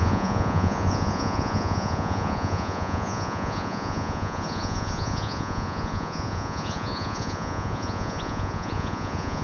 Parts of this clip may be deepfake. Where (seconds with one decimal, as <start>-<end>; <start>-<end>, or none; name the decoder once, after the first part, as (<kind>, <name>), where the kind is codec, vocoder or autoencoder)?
0.0-9.4 (vocoder, Vocos)